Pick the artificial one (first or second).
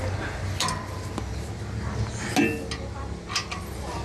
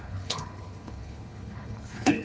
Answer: second